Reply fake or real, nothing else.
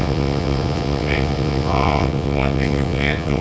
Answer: fake